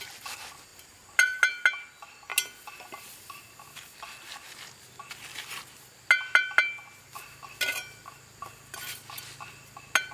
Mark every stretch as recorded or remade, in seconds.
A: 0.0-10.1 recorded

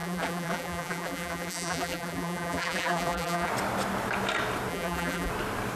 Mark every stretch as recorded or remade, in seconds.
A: 0.0-3.5 remade; 3.5-4.7 recorded; 4.7-5.3 remade; 5.3-5.8 recorded

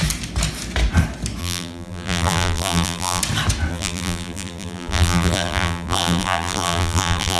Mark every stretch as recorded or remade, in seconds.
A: 0.0-1.4 recorded; 1.4-3.2 remade; 3.2-3.7 recorded; 3.7-7.4 remade

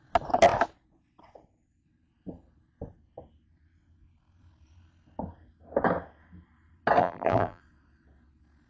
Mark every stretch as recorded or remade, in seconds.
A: 0.0-7.0 recorded; 7.0-7.6 remade; 7.6-8.7 recorded

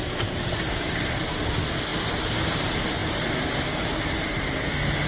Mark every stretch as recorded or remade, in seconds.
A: 0.0-5.1 remade

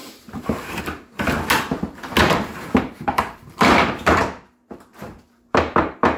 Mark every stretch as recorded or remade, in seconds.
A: 0.0-0.8 remade; 0.8-2.2 recorded; 2.2-6.2 remade

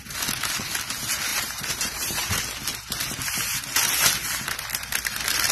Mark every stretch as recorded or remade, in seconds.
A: 0.0-1.3 recorded; 1.3-2.3 remade; 2.3-5.5 recorded